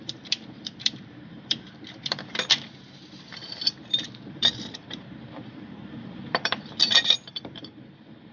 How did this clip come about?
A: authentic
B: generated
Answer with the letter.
B